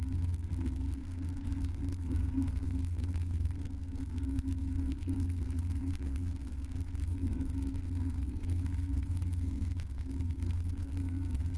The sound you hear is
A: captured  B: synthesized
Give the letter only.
B